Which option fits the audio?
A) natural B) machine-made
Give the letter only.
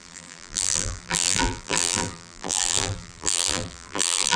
B